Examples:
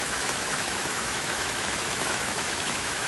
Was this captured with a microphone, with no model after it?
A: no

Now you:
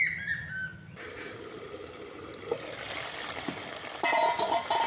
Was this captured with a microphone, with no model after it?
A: yes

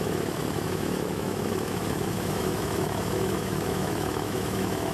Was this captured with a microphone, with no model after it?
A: no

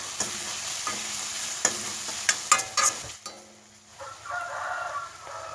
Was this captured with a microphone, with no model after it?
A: yes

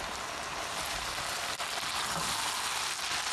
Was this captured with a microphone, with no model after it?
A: yes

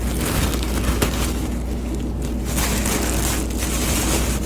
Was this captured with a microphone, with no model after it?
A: yes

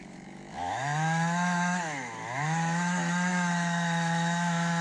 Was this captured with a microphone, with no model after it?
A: no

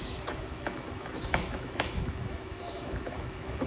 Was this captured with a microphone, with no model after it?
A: no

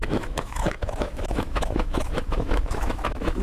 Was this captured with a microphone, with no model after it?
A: no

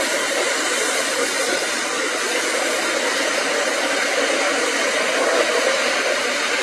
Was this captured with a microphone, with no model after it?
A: yes